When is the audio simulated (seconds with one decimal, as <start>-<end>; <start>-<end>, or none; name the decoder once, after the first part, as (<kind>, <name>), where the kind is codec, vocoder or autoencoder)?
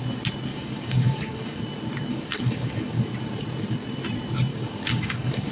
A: 0.5-1.6 (codec, DAC); 2.1-3.0; 4.5-5.5